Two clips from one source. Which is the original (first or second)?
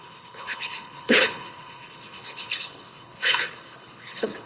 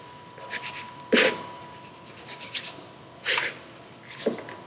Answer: second